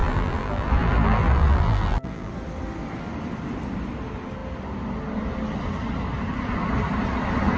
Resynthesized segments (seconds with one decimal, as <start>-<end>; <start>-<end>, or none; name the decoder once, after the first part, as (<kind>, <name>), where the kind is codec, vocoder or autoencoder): 0.0-2.3 (vocoder, BigVGAN v2)